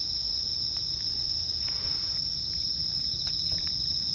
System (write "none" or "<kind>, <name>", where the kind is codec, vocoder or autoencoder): none